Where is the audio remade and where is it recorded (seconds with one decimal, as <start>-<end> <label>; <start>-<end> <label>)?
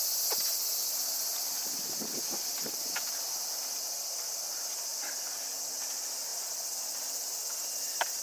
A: 0.0-8.2 recorded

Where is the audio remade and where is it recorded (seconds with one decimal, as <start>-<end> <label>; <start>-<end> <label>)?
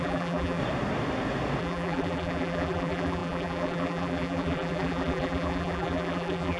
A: 0.0-0.6 remade; 0.6-1.6 recorded; 1.6-6.6 remade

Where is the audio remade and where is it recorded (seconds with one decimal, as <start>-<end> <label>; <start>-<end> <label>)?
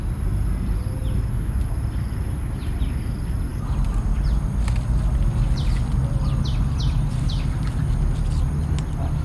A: 0.0-9.2 recorded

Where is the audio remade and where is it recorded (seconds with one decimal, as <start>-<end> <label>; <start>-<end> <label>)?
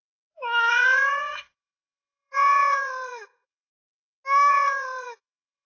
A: 0.0-0.7 recorded; 0.7-3.7 remade; 3.7-4.5 recorded; 4.5-5.7 remade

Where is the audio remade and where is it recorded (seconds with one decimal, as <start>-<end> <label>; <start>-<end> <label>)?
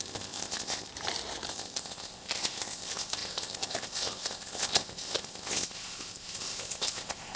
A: 0.0-0.9 remade; 0.9-1.5 recorded; 1.5-7.4 remade